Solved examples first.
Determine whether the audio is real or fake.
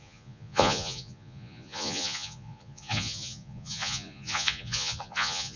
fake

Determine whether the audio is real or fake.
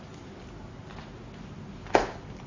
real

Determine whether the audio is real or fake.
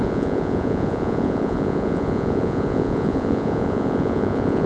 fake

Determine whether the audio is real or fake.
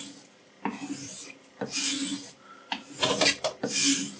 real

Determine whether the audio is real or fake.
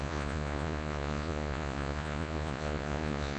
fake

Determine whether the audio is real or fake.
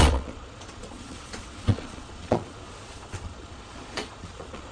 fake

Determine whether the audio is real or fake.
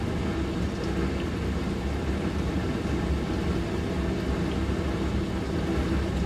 real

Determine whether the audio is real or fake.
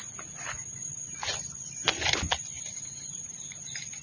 real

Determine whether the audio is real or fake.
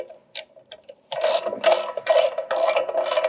real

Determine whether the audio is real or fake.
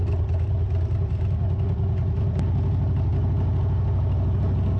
real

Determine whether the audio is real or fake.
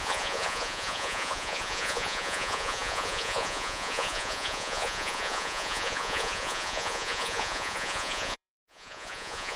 fake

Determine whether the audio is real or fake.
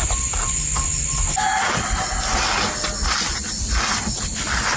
real